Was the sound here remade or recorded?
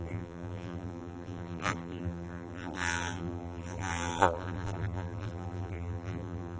remade